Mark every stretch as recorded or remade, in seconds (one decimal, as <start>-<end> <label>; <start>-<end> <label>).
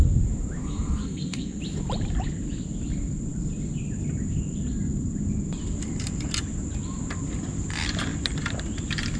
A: 0.0-0.6 recorded; 0.6-1.6 remade; 1.6-9.2 recorded